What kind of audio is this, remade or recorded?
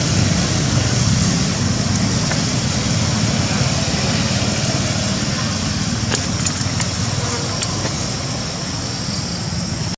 recorded